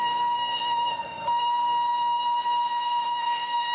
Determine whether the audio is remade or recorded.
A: remade